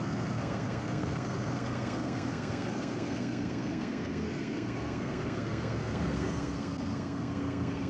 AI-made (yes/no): yes